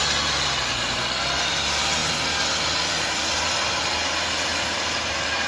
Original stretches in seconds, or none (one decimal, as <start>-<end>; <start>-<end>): 0.0-5.5